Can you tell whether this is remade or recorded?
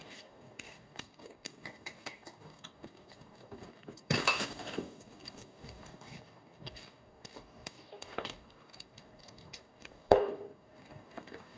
remade